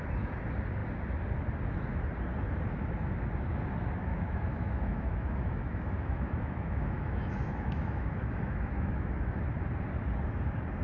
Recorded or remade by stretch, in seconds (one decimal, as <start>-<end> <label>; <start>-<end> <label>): 0.0-4.1 recorded; 4.1-9.4 remade; 9.4-10.8 recorded